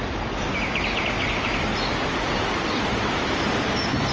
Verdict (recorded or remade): recorded